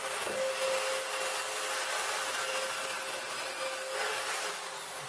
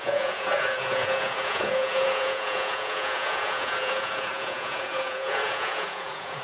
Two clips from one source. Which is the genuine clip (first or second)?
first